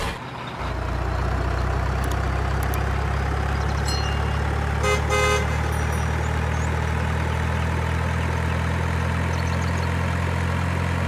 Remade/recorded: recorded